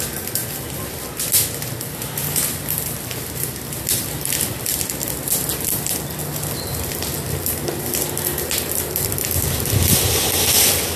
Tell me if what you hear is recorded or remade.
recorded